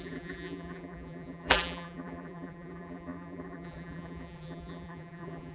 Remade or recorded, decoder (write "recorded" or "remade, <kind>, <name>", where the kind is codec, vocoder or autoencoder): remade, vocoder, BigVGAN v2